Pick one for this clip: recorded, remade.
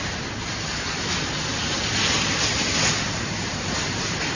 recorded